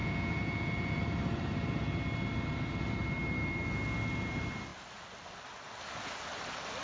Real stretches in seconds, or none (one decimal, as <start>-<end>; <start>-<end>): 1.0-6.8